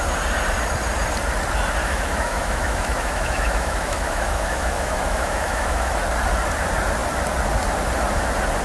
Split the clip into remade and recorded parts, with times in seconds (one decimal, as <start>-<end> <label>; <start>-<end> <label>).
0.0-1.8 recorded; 1.8-5.9 remade; 5.9-8.6 recorded

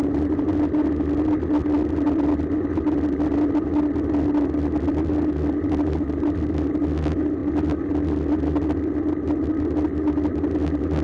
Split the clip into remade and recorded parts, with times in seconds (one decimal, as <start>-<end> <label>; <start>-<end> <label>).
0.0-11.0 recorded

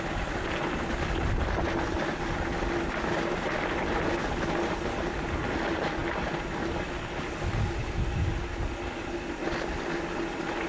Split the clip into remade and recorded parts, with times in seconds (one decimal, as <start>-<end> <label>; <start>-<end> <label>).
0.0-10.7 recorded

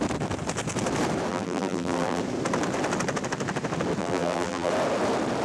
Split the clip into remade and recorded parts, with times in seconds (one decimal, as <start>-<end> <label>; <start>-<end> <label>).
0.0-1.3 recorded; 1.3-2.2 remade; 2.2-4.0 recorded; 4.0-4.7 remade; 4.7-5.4 recorded

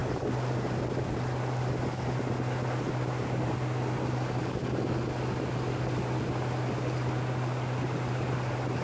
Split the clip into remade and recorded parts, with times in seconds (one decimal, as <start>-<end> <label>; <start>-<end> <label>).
0.0-8.8 recorded

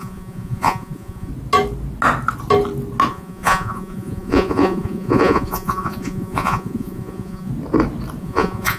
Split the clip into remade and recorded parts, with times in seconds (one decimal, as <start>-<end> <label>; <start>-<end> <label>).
0.0-1.3 remade; 1.3-3.1 recorded; 3.1-7.5 remade; 7.5-8.2 recorded; 8.2-8.8 remade